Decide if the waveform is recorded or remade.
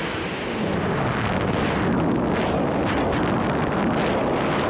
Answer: recorded